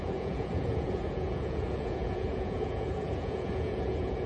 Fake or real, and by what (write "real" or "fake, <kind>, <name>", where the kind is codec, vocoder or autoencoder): fake, vocoder, Vocos